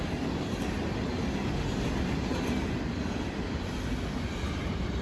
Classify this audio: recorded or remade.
recorded